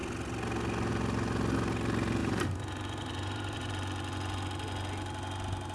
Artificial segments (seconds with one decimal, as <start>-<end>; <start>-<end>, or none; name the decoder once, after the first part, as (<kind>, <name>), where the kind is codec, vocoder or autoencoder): 2.2-3.7 (vocoder, BigVGAN v2)